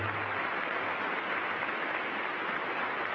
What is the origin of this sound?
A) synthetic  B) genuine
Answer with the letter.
B